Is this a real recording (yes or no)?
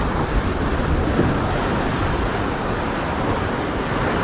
yes